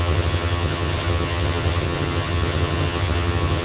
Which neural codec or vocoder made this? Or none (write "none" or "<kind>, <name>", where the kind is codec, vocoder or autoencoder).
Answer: vocoder, HiFi-GAN